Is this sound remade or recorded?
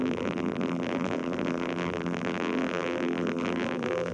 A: remade